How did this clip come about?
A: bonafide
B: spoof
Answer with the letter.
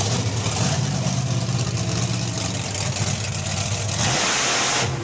A